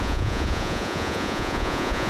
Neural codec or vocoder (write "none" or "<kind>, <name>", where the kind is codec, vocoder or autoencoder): vocoder, Vocos